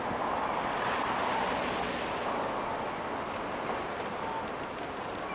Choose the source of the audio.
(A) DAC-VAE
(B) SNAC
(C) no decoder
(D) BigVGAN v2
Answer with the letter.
C